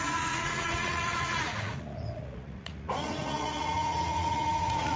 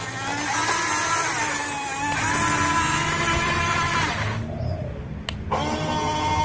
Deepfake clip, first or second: first